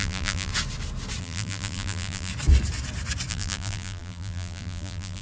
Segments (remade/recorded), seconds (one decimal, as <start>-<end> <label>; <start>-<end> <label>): 0.0-0.5 remade; 0.5-1.2 recorded; 1.2-2.3 remade; 2.3-3.3 recorded; 3.3-5.2 remade